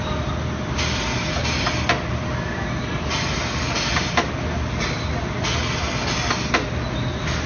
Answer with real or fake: real